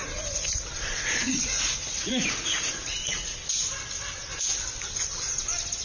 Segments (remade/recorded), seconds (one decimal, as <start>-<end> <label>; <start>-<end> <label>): 0.0-3.5 remade; 3.5-5.8 recorded